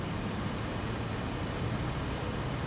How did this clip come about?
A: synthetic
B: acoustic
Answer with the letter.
B